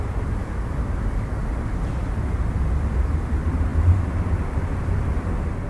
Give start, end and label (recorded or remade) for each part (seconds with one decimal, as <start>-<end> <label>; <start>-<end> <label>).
0.0-0.4 recorded; 0.4-1.4 remade; 1.4-5.7 recorded